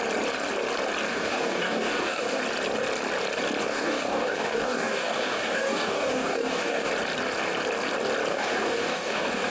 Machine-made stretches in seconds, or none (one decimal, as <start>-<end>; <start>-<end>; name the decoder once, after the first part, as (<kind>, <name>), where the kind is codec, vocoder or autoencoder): 1.1-2.4 (codec, DAC); 3.6-6.9; 8.3-9.5